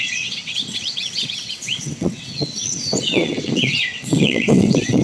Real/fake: fake